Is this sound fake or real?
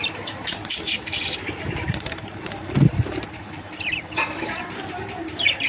fake